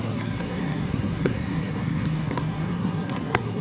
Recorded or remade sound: remade